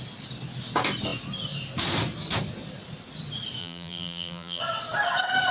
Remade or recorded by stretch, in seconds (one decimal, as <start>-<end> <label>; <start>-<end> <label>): 0.0-3.6 recorded; 3.6-4.6 remade; 4.6-5.5 recorded